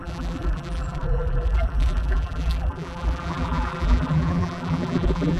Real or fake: fake